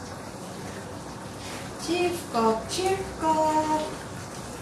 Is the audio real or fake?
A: real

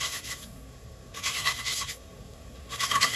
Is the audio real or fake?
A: fake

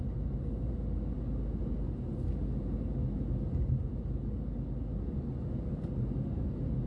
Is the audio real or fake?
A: real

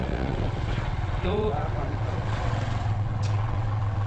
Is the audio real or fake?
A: fake